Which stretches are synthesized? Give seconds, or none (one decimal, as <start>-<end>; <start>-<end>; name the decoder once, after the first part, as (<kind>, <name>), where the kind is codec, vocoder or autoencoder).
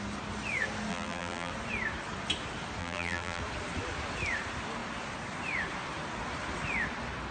0.9-1.5 (vocoder, BigVGAN v2); 2.8-3.4